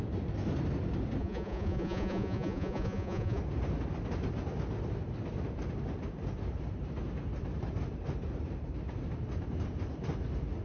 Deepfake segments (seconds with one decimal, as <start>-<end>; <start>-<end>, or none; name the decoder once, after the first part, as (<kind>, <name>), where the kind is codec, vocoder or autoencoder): 1.2-3.4 (vocoder, Vocos)